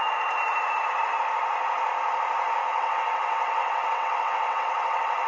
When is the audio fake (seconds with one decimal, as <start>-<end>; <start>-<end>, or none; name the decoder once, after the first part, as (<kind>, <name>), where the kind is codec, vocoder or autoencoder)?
2.7-5.3 (vocoder, WaveNeXt)